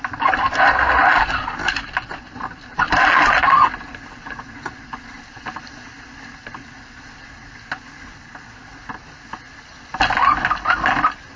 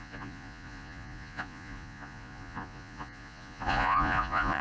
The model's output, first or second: second